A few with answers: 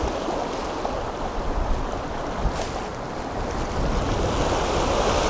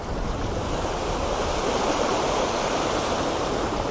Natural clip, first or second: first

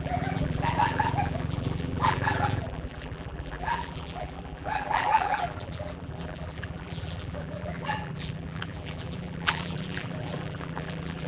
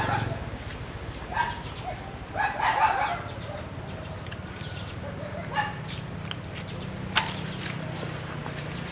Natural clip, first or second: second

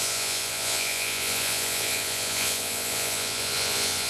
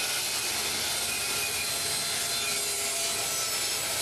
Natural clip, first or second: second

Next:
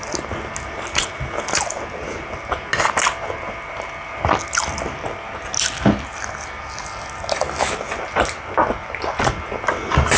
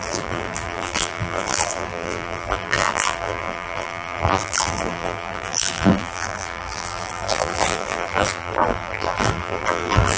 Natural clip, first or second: first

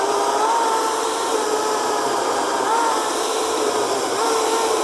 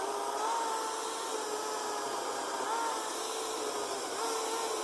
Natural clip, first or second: second